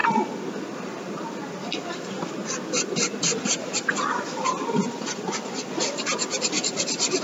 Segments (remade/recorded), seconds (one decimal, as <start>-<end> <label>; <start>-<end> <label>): 0.0-3.4 recorded; 3.4-7.2 remade